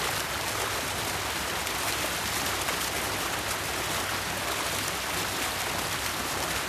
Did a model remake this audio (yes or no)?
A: no